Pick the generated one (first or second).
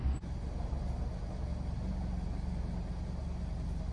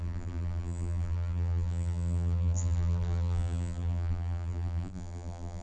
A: second